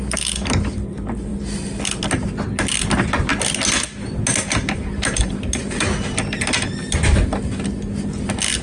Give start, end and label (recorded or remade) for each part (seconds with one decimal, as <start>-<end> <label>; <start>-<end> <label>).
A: 0.0-8.6 recorded